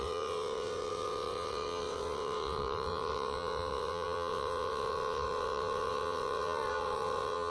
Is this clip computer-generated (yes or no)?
yes